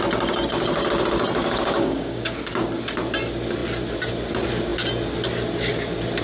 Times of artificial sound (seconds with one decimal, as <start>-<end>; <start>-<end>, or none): 1.4-2.5